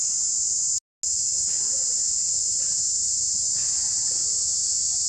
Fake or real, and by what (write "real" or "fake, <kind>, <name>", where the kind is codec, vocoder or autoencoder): real